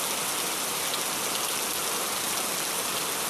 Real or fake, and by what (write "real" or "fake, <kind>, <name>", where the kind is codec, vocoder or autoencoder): real